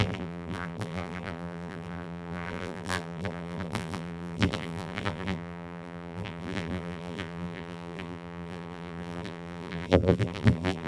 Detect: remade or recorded remade